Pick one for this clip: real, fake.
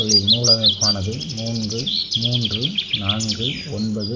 real